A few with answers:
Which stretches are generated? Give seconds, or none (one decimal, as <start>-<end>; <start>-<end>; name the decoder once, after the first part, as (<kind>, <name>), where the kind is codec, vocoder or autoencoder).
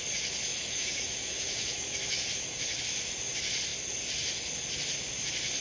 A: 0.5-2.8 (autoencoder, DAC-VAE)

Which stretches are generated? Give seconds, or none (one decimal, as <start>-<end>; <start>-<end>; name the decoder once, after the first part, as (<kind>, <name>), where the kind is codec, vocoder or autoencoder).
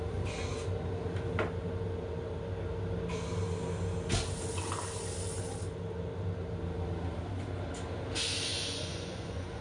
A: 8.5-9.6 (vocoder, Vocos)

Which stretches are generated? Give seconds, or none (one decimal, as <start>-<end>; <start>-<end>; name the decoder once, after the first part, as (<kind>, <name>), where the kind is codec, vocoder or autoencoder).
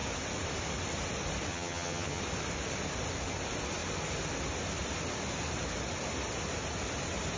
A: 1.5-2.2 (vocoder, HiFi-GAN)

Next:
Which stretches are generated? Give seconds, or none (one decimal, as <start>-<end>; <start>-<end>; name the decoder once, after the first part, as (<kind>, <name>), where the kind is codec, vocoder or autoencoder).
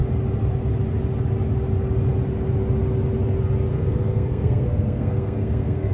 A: 3.7-5.9 (codec, SNAC)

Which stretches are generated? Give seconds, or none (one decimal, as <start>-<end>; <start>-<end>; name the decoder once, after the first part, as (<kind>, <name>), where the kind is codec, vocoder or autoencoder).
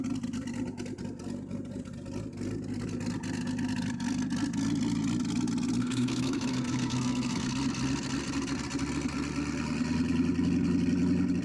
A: 5.8-7.5 (codec, SNAC)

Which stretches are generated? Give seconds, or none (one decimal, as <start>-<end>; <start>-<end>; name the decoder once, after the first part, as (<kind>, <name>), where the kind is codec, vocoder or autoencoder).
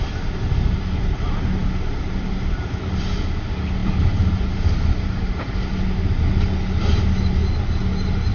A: none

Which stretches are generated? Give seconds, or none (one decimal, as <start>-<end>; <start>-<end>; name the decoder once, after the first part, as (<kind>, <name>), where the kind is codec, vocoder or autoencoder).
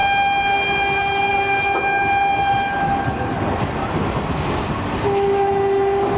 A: none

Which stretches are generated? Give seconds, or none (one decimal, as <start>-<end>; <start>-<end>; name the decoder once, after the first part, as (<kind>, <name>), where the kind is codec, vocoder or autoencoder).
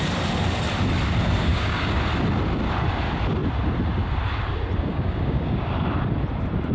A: 1.4-2.0 (codec, DAC); 4.9-5.6